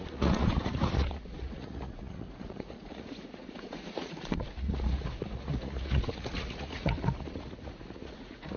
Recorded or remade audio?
remade